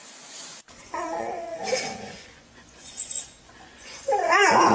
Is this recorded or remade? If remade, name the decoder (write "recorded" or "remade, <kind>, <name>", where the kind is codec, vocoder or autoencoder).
remade, vocoder, Vocos